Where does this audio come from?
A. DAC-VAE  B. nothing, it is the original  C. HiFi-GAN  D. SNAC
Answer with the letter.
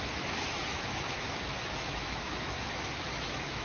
A